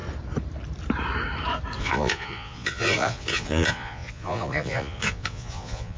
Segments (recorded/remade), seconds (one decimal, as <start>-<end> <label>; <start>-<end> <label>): 0.0-1.8 recorded; 1.8-6.0 remade